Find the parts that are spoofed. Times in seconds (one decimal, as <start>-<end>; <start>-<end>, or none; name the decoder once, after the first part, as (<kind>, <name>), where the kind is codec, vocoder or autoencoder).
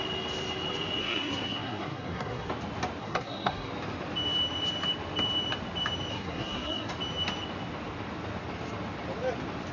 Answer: 1.0-2.5 (codec, SNAC); 3.0-3.7; 6.1-6.9